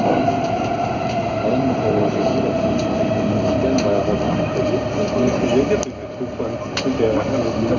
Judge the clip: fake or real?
real